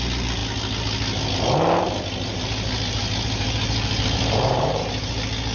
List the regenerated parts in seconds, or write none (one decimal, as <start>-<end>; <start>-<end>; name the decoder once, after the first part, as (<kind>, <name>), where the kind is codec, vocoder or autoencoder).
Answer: 2.3-5.1 (vocoder, BigVGAN v2)